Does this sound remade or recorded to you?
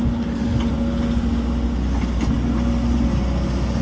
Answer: recorded